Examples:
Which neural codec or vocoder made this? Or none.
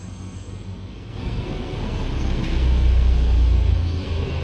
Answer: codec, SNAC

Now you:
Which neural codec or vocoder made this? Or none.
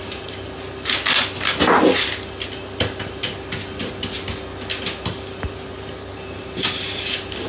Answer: none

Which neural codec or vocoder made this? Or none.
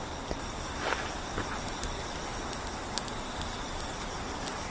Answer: none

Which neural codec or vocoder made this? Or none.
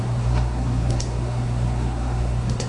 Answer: codec, SNAC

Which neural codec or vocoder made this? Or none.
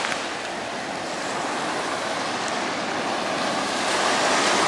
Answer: none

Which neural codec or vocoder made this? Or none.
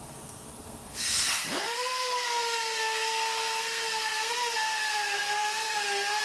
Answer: codec, SNAC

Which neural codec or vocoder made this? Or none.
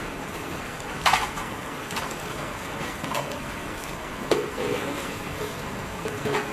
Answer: codec, SNAC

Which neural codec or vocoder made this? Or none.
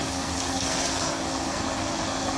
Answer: codec, SNAC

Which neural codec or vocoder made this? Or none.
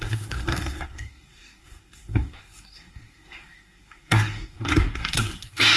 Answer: codec, SNAC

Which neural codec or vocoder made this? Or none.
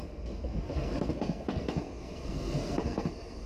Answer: codec, SNAC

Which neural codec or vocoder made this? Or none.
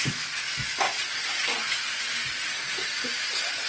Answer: none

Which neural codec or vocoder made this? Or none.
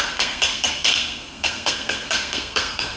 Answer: codec, SNAC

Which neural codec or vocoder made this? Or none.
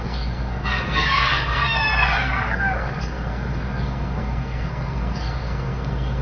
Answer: codec, SNAC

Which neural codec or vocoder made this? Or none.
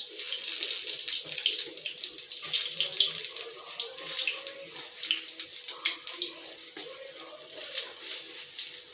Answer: none